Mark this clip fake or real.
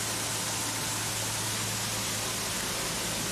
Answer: real